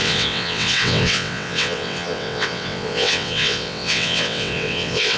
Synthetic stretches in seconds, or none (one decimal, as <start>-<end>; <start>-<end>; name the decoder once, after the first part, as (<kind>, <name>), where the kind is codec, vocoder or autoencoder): 0.0-5.2 (vocoder, WaveNeXt)